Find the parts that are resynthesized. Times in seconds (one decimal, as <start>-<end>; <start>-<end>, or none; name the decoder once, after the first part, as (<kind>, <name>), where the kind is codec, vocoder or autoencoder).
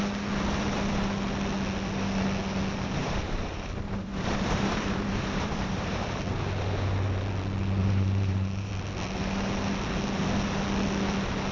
3.0-6.2 (vocoder, BigVGAN v2); 7.8-8.7